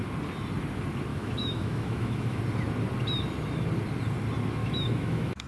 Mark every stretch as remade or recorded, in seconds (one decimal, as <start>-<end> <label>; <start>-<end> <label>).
0.0-1.1 recorded; 1.1-2.4 remade; 2.4-4.6 recorded; 4.6-5.5 remade